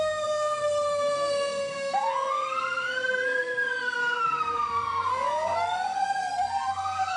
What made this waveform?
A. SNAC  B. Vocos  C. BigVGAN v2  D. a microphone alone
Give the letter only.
A